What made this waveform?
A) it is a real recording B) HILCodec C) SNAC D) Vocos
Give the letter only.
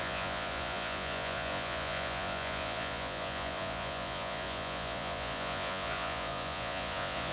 D